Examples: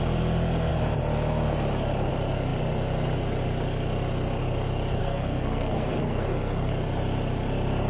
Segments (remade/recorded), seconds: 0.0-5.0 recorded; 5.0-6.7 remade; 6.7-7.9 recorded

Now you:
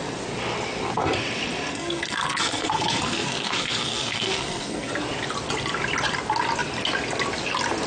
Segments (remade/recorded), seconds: 0.0-1.7 recorded; 1.7-4.9 remade; 4.9-7.9 recorded

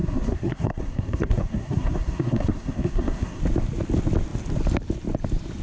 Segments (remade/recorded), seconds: 0.0-3.4 remade; 3.4-5.6 recorded

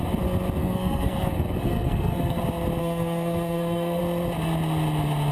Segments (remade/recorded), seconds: 0.0-0.6 recorded; 0.6-2.4 remade; 2.4-2.8 recorded; 2.8-4.0 remade; 4.0-5.3 recorded

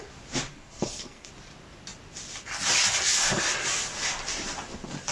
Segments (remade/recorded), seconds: 0.0-0.5 recorded; 0.5-1.3 remade; 1.3-5.1 recorded

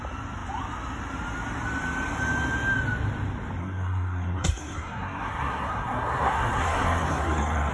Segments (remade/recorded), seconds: 0.0-3.6 recorded; 3.6-7.7 remade

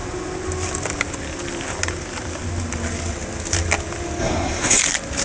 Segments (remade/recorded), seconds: 0.0-4.2 recorded; 4.2-4.8 remade; 4.8-5.2 recorded

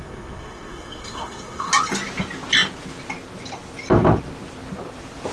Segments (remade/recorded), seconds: 0.0-1.7 remade; 1.7-5.3 recorded